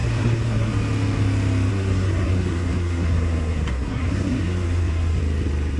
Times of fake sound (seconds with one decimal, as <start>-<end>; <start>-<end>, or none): 0.0-0.7; 1.7-5.2